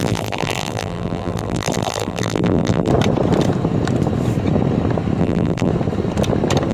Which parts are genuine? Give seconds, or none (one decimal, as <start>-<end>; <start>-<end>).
2.9-5.2; 5.7-6.7